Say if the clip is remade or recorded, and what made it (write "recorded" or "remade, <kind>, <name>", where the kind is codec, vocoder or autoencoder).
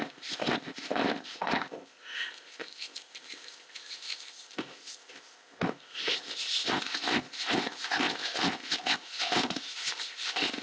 remade, codec, ZipCodec